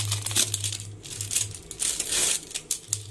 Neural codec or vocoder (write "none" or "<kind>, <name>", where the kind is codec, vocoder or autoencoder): none